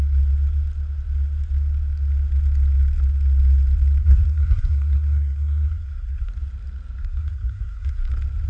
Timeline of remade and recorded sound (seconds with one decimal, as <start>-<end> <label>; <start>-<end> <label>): 0.0-4.0 recorded; 4.0-6.3 remade; 6.3-7.0 recorded; 7.0-8.1 remade; 8.1-8.5 recorded